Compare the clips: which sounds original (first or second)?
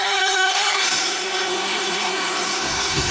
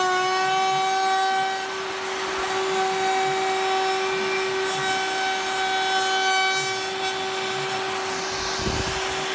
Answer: second